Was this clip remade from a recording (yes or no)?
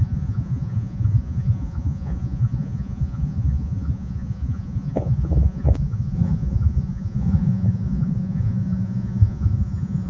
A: yes